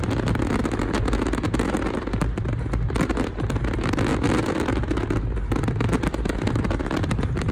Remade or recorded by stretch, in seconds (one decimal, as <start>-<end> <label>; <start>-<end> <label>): 0.0-4.1 recorded; 4.1-4.8 remade; 4.8-7.5 recorded